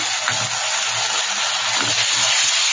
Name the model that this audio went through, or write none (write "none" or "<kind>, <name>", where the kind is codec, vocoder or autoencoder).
none